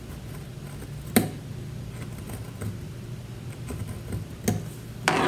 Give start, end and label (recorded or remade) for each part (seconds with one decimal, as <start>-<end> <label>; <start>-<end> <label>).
0.0-5.3 recorded